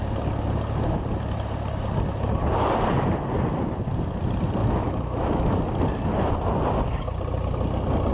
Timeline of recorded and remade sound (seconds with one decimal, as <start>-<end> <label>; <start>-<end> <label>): 0.0-4.6 recorded; 4.6-5.6 remade; 5.6-8.1 recorded